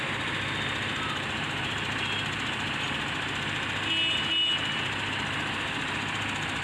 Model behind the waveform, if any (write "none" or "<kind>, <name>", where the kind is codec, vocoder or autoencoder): none